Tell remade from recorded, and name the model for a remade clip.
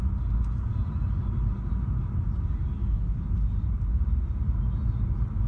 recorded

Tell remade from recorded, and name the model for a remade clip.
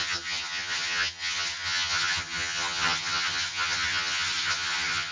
remade, vocoder, HiFi-GAN